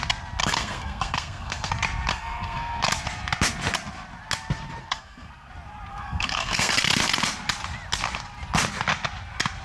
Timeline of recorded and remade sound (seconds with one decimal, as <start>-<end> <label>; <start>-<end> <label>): 0.0-0.4 recorded; 0.4-1.7 remade; 1.7-2.1 recorded; 2.1-2.8 remade; 2.8-4.8 recorded; 4.8-5.5 remade; 5.5-5.9 recorded; 5.9-6.7 remade; 6.7-9.6 recorded